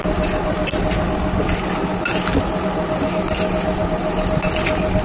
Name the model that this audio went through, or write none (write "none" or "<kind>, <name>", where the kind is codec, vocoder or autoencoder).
none